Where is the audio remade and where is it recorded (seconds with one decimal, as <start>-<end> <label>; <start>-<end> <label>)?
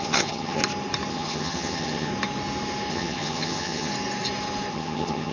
0.0-0.6 remade; 0.6-1.1 recorded; 1.1-2.1 remade; 2.1-2.9 recorded; 2.9-3.9 remade; 3.9-4.7 recorded; 4.7-5.3 remade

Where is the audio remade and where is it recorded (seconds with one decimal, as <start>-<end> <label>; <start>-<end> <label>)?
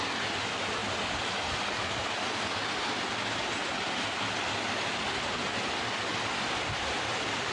0.0-7.5 recorded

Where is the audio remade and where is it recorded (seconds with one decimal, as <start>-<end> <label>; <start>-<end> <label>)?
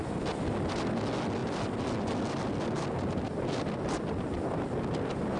0.0-5.4 recorded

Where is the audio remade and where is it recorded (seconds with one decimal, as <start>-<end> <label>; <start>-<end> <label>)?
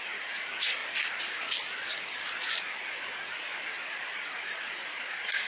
0.0-0.8 remade; 0.8-4.1 recorded; 4.1-5.5 remade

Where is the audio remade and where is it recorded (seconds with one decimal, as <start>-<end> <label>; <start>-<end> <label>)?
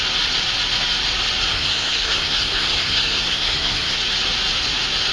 0.0-1.5 recorded; 1.5-4.0 remade; 4.0-5.1 recorded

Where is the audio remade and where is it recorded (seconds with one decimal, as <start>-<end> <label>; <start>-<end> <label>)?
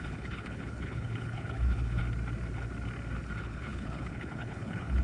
0.0-2.0 remade; 2.0-3.4 recorded; 3.4-5.0 remade